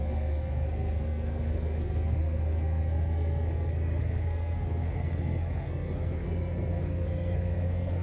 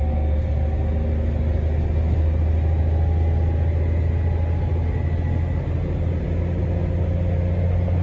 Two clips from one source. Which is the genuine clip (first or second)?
second